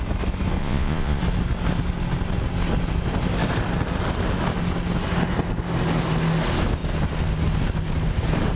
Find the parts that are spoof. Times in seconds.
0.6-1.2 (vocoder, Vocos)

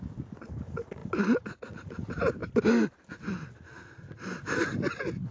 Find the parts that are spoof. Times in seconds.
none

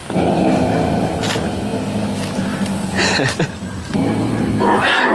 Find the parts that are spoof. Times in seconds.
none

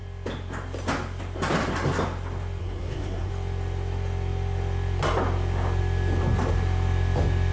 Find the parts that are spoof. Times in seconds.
2.6-3.3 (codec, SNAC)